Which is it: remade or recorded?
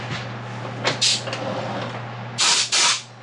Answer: recorded